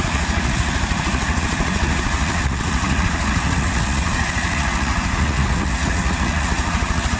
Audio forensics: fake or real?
fake